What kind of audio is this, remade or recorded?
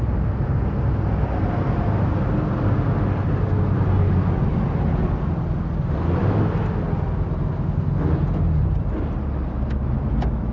recorded